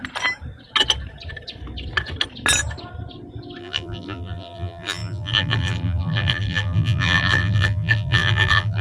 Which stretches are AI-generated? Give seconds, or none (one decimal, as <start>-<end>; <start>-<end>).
3.6-8.8